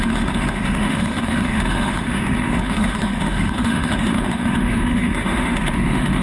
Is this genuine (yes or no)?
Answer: no